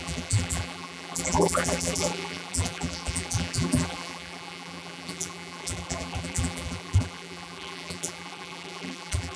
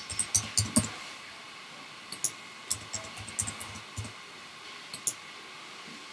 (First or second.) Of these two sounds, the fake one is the first